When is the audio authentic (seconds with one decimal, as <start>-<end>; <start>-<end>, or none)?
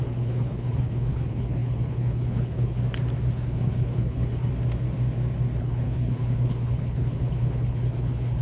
2.8-3.3; 4.5-5.6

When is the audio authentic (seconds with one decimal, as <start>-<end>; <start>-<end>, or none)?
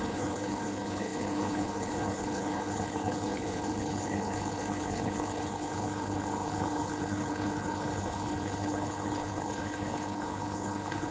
none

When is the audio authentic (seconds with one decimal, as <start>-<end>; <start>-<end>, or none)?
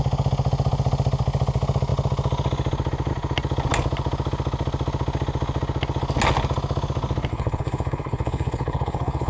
0.0-7.3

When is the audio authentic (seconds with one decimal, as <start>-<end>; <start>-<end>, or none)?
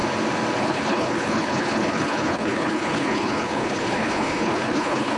0.0-0.6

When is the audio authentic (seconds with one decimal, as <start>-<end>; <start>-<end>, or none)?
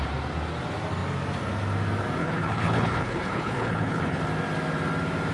0.0-2.2; 4.2-5.3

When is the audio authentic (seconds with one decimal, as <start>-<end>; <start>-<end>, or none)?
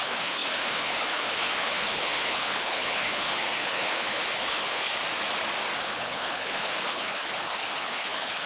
5.0-5.8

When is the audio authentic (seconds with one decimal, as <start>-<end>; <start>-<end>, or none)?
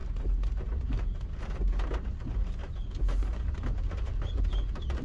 0.0-5.0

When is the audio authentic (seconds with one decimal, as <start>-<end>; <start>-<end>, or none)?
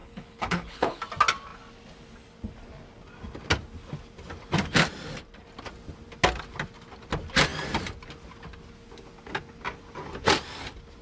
1.0-11.0